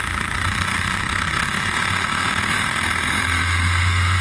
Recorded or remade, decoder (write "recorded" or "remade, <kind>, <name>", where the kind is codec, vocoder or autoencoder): remade, autoencoder, DAC-VAE